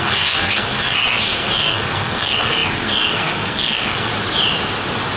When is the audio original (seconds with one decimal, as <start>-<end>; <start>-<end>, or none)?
4.1-5.2